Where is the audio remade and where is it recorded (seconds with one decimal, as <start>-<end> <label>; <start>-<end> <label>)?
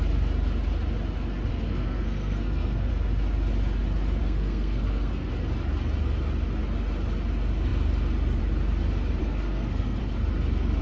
0.0-1.5 recorded; 1.5-2.9 remade; 2.9-4.2 recorded; 4.2-5.3 remade; 5.3-9.2 recorded; 9.2-10.0 remade; 10.0-10.8 recorded